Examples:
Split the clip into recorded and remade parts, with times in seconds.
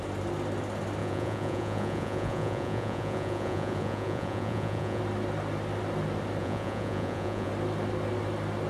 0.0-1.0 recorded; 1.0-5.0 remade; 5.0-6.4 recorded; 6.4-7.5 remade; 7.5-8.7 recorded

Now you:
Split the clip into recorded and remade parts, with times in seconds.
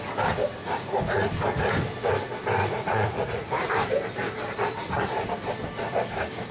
0.0-0.6 recorded; 0.6-1.3 remade; 1.3-2.6 recorded; 2.6-3.7 remade; 3.7-6.5 recorded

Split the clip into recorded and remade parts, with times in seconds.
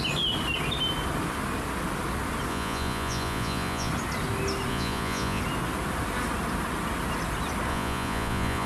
0.0-2.5 recorded; 2.5-3.9 remade; 3.9-4.7 recorded; 4.7-5.4 remade; 5.4-7.7 recorded; 7.7-8.7 remade